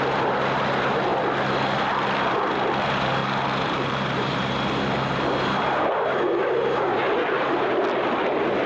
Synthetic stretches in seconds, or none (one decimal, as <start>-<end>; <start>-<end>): 3.2-4.5